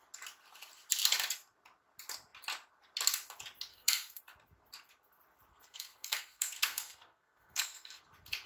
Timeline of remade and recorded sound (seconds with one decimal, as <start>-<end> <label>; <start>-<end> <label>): 0.0-3.7 recorded; 3.7-4.2 remade; 4.2-5.5 recorded; 5.5-8.0 remade; 8.0-8.5 recorded